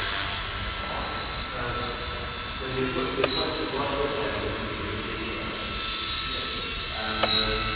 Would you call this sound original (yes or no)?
yes